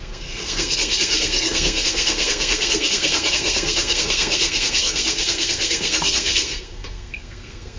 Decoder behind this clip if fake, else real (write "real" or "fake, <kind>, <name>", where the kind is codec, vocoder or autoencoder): fake, codec, SNAC